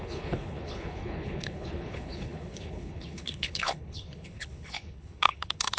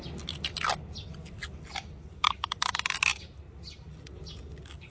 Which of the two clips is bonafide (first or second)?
second